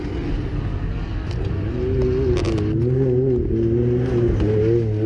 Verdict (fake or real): real